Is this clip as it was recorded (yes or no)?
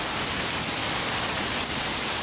yes